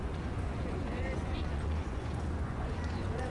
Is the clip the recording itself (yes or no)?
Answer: no